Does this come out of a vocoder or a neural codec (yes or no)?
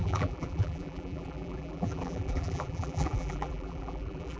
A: yes